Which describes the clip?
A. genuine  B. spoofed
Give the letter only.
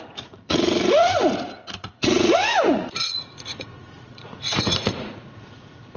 B